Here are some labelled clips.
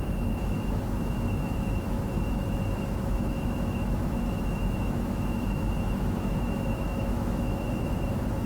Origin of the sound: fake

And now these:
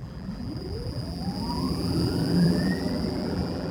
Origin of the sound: fake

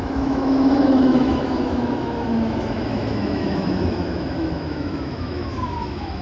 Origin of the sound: fake